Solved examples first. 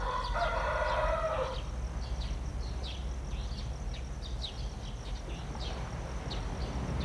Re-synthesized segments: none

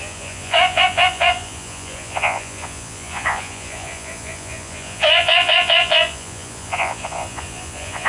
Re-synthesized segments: 0.0-8.1 (vocoder, Vocos)

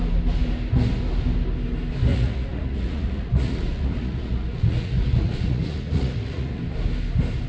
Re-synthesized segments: 2.1-6.6 (vocoder, Vocos)

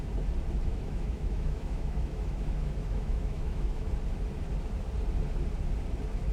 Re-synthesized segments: 0.7-3.9 (autoencoder, DAC-VAE)

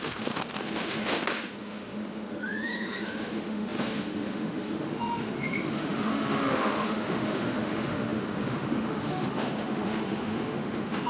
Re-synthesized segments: 0.0-11.1 (autoencoder, DAC-VAE)